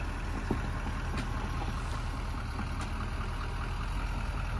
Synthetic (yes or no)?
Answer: no